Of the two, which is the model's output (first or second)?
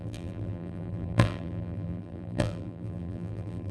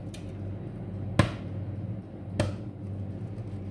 first